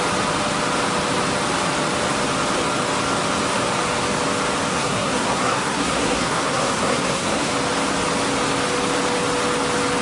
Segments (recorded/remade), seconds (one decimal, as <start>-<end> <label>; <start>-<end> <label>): 0.0-4.7 recorded; 4.7-7.5 remade; 7.5-10.0 recorded